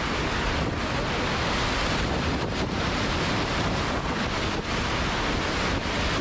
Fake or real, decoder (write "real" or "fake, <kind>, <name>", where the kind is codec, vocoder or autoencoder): real